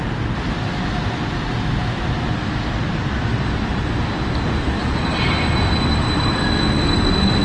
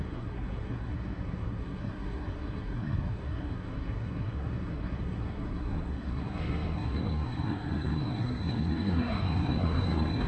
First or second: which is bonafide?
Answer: first